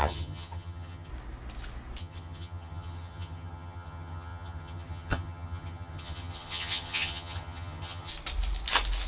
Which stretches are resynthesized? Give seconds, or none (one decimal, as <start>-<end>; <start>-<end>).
0.0-1.1; 2.0-8.1